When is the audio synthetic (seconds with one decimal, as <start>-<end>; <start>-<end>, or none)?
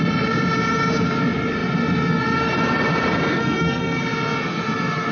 3.3-4.0